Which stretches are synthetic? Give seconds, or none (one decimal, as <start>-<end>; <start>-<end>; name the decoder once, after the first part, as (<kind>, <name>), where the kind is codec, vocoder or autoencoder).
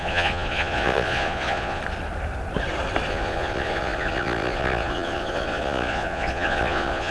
0.0-1.8 (vocoder, Vocos); 3.1-7.1